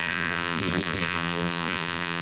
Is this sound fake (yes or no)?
yes